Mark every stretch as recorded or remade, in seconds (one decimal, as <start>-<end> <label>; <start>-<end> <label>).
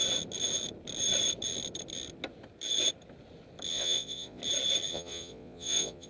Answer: 0.0-3.7 recorded; 3.7-4.4 remade; 4.4-4.9 recorded; 4.9-6.1 remade